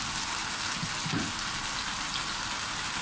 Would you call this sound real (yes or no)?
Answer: yes